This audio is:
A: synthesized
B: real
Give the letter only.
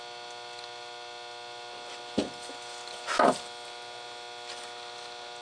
B